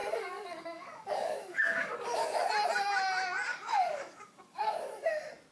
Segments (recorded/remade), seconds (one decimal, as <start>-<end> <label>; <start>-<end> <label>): 0.0-2.5 remade; 2.5-3.5 recorded; 3.5-5.1 remade; 5.1-5.5 recorded